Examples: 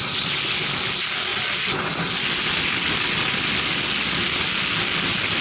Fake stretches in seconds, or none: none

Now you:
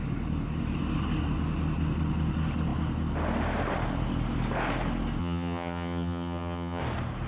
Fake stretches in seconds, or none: 5.2-6.8 (vocoder, HiFi-GAN)

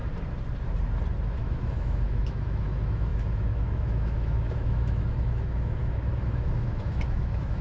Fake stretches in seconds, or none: 1.3-7.6 (autoencoder, DAC-VAE)

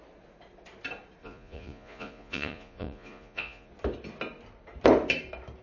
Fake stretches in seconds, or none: 1.2-3.7 (vocoder, Vocos)

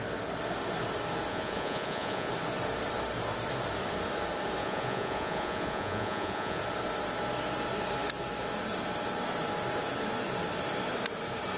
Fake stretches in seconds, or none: 1.3-2.3 (vocoder, Vocos); 4.6-6.6

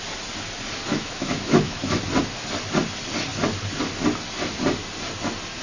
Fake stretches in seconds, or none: 0.9-2.0 (autoencoder, DAC-VAE)

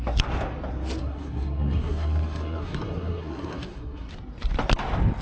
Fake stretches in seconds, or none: 1.0-4.1 (codec, SNAC)

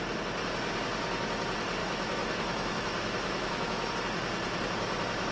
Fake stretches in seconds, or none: 1.8-3.9 (autoencoder, DAC-VAE)